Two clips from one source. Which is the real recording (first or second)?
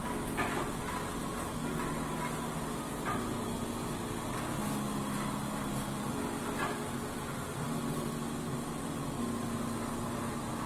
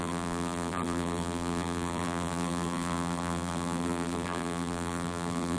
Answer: first